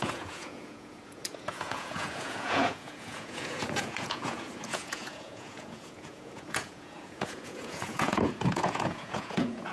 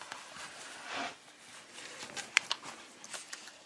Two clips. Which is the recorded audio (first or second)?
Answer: second